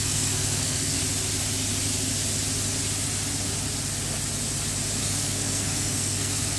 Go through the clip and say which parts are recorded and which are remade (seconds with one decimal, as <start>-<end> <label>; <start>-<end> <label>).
0.0-1.0 remade; 1.0-5.0 recorded; 5.0-6.6 remade